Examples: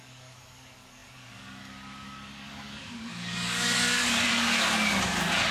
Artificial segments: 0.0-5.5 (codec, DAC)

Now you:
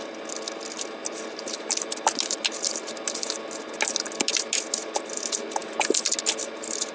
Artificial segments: none

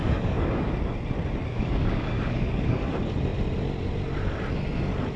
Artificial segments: 0.0-0.7 (codec, DAC); 1.4-2.9

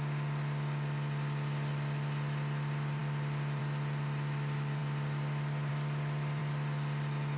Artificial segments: none

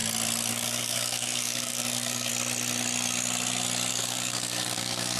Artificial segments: 0.5-2.3 (codec, DAC); 3.9-5.2